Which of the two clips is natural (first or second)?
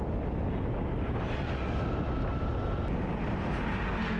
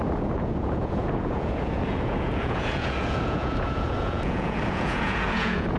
first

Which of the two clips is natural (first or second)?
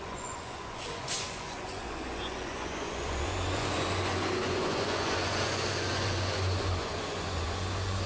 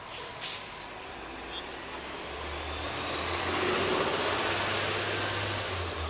second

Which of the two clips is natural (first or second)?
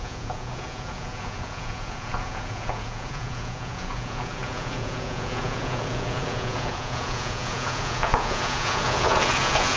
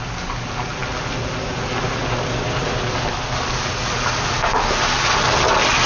second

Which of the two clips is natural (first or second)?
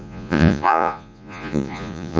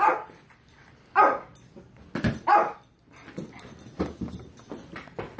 second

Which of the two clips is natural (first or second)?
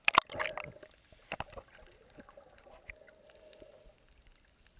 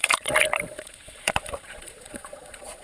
first